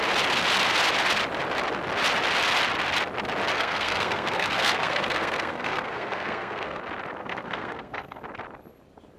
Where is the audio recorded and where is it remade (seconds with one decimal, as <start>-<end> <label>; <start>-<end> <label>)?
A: 0.0-3.5 recorded; 3.5-6.8 remade; 6.8-7.2 recorded; 7.2-8.2 remade; 8.2-9.2 recorded